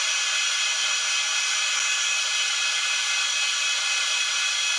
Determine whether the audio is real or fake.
real